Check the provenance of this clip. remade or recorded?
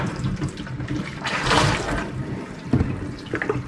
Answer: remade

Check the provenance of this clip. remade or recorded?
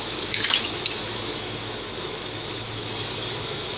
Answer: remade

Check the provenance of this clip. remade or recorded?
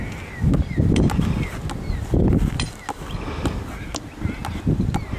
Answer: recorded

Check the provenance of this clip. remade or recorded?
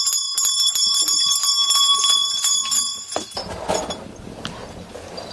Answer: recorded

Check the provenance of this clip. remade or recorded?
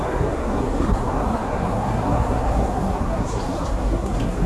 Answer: remade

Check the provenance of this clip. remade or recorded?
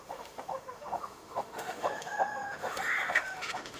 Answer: remade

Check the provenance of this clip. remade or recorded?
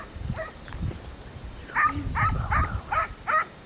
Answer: recorded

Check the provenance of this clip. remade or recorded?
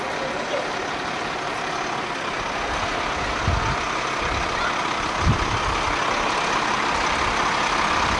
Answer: recorded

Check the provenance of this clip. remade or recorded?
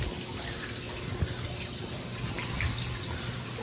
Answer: recorded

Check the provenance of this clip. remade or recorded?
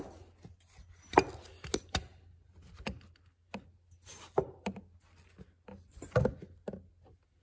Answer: recorded